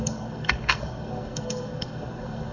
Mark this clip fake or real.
fake